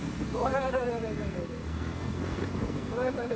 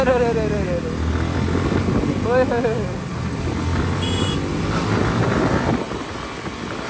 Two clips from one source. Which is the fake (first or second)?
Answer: first